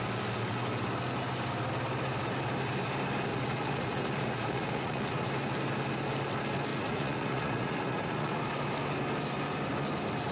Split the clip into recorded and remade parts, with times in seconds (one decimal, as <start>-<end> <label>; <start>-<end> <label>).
0.0-3.3 recorded; 3.3-5.3 remade; 5.3-6.7 recorded; 6.7-8.4 remade; 8.4-10.3 recorded